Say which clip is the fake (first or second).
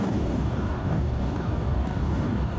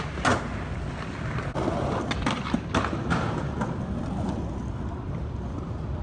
first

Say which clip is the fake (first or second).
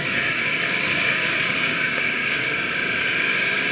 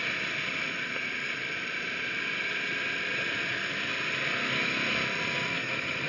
first